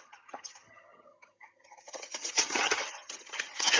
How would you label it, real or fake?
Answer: fake